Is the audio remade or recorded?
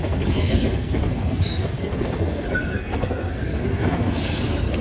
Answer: remade